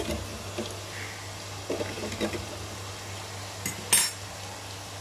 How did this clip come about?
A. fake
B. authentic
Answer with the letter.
B